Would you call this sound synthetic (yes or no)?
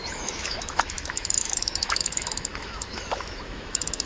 yes